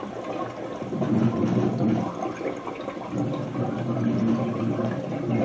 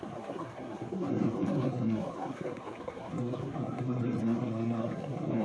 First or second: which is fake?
second